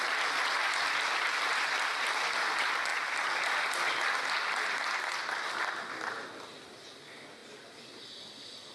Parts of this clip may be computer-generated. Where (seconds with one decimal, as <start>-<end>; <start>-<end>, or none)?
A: 7.4-8.0